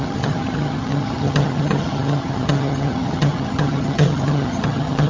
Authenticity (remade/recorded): remade